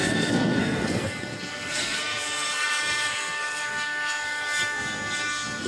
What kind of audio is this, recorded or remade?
remade